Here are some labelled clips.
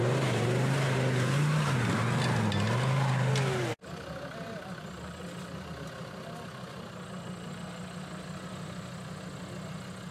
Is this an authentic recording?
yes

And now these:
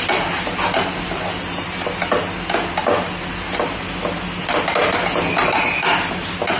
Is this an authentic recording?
yes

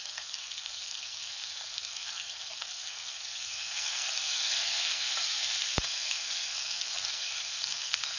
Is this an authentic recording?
no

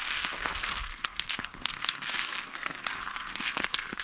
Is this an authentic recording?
no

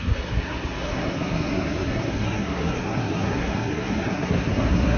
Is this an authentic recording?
no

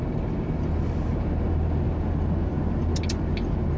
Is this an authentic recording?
yes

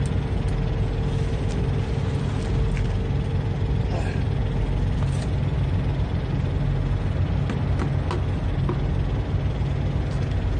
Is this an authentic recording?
yes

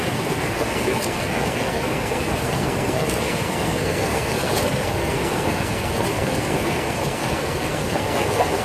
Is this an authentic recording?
no